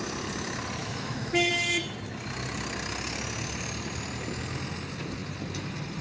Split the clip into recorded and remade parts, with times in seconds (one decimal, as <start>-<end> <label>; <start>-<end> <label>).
0.0-0.8 recorded; 0.8-1.5 remade; 1.5-6.0 recorded